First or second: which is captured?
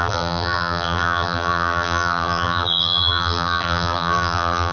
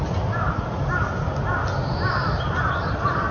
second